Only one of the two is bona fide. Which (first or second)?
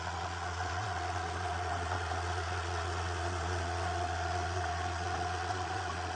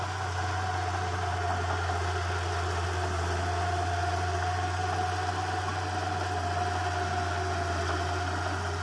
second